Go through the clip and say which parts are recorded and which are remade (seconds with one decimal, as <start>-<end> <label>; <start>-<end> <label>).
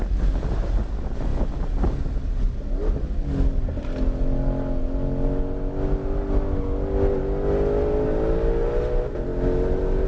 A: 0.0-10.1 recorded